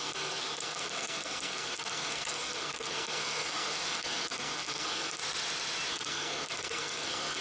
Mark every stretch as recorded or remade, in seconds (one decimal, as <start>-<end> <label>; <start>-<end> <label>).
0.0-5.2 remade; 5.2-5.9 recorded; 5.9-7.4 remade